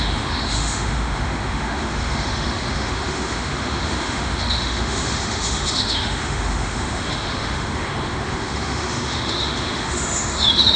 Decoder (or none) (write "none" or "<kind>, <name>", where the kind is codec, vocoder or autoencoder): autoencoder, DAC-VAE